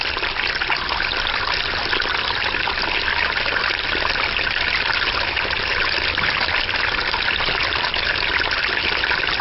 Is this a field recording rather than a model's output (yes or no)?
yes